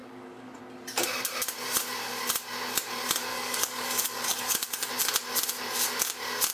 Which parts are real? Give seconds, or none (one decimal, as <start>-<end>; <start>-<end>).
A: 0.6-3.3; 4.9-6.5